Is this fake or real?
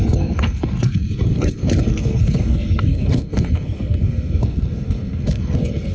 fake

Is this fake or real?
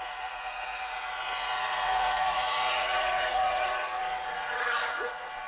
fake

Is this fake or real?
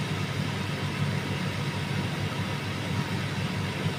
real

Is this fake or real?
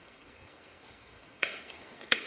fake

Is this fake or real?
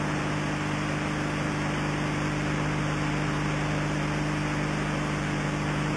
real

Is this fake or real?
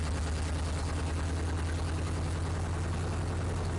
real